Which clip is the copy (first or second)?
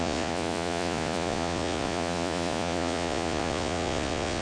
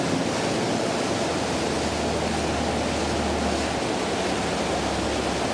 first